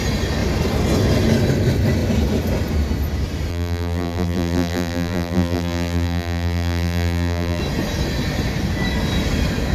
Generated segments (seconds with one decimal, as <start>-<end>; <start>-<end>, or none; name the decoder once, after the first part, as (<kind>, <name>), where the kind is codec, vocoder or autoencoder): 3.5-7.6 (vocoder, BigVGAN v2)